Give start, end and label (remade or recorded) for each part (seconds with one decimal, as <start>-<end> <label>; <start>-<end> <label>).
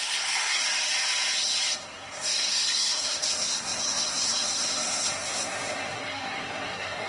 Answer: 0.0-0.6 remade; 0.6-1.8 recorded; 1.8-7.1 remade